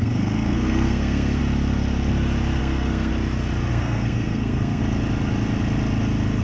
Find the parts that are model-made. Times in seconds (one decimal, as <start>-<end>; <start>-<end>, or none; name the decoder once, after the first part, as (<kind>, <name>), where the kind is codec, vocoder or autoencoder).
0.0-1.4 (codec, SNAC); 2.6-3.1; 3.7-4.8